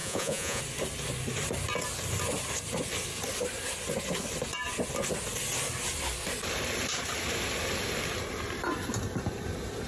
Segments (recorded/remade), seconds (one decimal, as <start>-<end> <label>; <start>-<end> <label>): 0.0-0.6 remade; 0.6-9.9 recorded